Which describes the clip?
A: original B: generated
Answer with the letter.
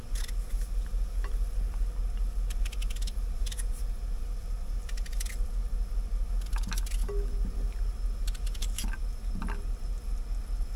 A